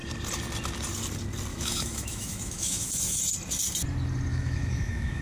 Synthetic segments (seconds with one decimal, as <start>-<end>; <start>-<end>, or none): 1.5-3.2; 4.3-5.2